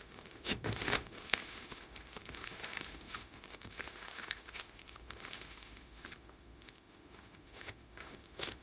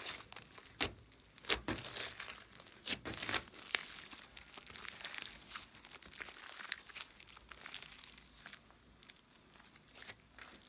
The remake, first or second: first